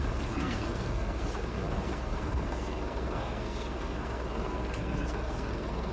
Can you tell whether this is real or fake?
fake